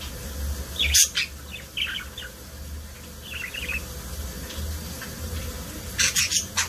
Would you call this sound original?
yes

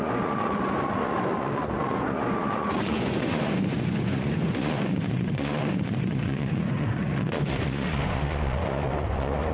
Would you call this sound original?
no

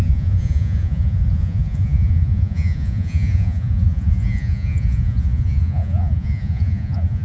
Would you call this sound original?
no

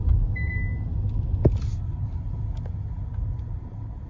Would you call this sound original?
yes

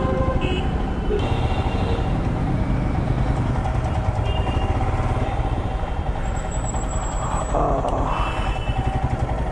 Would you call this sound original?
yes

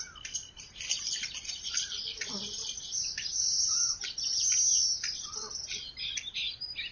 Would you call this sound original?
yes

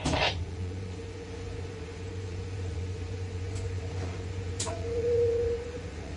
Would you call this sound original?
no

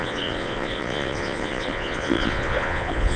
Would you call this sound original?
no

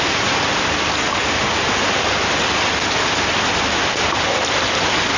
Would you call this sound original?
yes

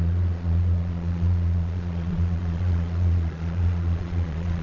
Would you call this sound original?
no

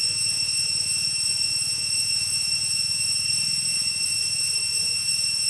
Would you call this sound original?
no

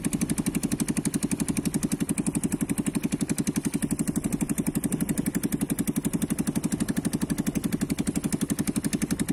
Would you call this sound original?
yes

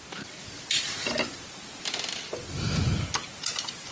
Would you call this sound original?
yes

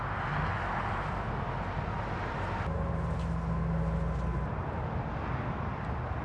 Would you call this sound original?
yes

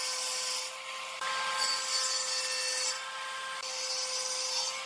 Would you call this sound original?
yes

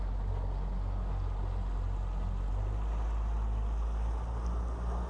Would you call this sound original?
yes